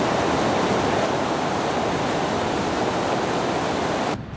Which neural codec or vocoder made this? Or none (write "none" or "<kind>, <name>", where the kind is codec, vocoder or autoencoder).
none